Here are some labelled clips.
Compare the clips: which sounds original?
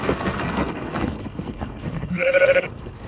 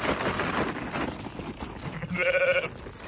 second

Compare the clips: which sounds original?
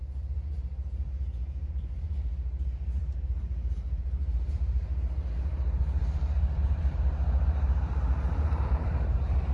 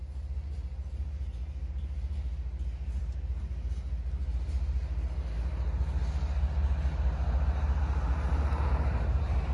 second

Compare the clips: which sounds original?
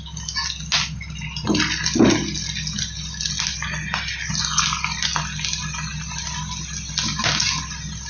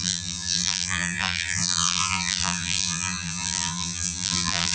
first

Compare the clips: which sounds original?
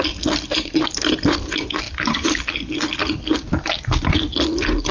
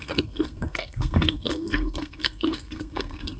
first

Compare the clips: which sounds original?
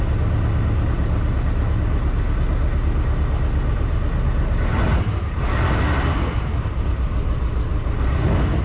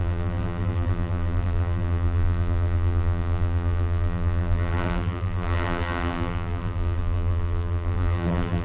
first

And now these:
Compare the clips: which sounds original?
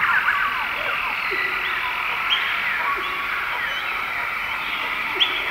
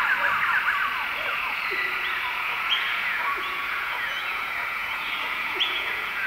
first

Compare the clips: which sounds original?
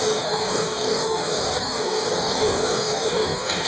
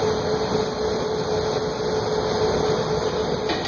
second